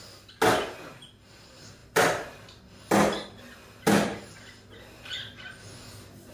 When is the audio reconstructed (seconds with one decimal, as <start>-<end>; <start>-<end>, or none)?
none